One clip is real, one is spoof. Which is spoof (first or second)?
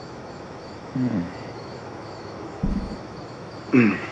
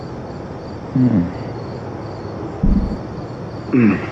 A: first